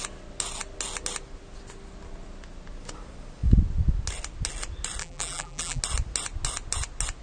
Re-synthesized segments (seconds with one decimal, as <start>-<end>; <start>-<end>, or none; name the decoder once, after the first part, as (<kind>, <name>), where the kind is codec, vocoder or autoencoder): 5.0-5.8 (vocoder, BigVGAN v2)